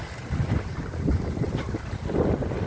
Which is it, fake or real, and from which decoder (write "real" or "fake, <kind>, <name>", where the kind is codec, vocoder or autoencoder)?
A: real